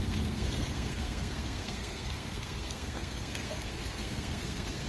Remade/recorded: remade